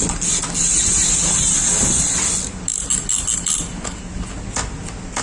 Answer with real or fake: real